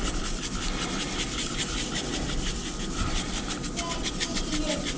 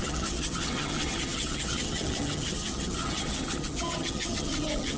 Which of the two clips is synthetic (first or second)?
second